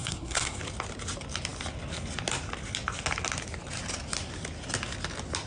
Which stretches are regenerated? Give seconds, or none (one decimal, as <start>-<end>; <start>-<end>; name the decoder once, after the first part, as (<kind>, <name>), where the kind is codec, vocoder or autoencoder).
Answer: 0.0-0.6 (codec, SNAC)